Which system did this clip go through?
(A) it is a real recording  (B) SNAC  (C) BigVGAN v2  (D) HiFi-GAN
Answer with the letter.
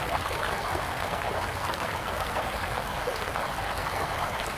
B